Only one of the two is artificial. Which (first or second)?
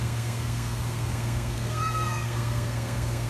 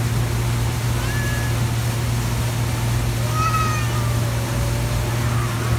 first